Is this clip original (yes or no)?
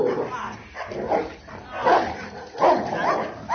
yes